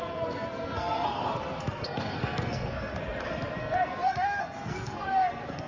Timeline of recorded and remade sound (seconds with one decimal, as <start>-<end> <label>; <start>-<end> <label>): 0.0-3.0 remade; 3.0-3.6 recorded; 3.6-5.7 remade